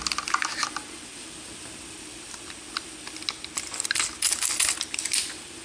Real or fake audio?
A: real